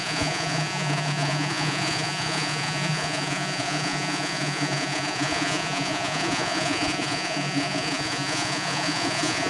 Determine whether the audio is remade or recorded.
remade